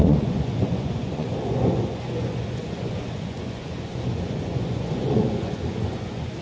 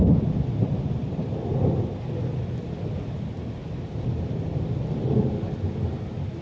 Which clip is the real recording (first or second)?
second